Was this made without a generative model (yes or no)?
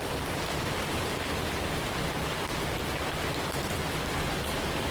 yes